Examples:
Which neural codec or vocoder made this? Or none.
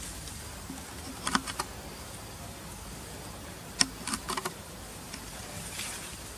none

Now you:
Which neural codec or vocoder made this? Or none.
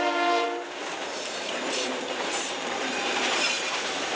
vocoder, BigVGAN v2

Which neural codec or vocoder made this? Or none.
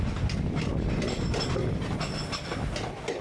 none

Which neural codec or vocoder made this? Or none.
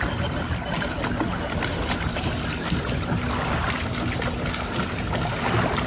none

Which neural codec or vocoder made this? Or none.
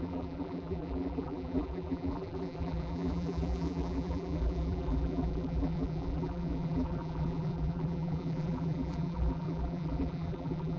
vocoder, BigVGAN v2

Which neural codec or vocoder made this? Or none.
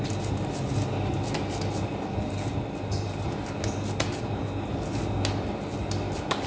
none